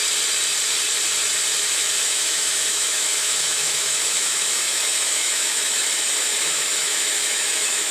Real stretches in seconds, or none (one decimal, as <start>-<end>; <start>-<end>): 0.0-1.7